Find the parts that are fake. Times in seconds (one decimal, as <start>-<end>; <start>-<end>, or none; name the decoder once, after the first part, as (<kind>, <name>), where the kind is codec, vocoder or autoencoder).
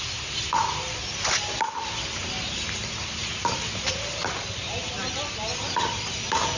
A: none